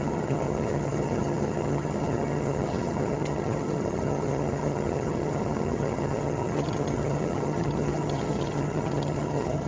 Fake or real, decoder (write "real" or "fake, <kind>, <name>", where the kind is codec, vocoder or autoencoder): fake, vocoder, HiFi-GAN